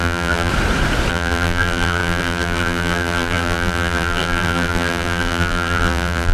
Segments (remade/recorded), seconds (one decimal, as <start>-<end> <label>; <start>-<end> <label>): 0.0-0.5 remade; 0.5-1.1 recorded; 1.1-6.3 remade